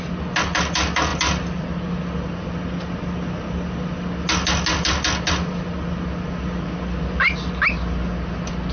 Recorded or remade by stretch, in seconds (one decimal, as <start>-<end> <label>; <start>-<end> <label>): 0.0-8.7 recorded